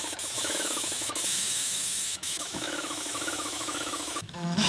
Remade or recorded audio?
remade